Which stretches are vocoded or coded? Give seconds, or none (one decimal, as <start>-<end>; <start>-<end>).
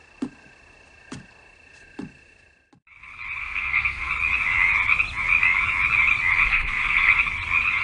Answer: 3.4-4.1; 6.5-7.1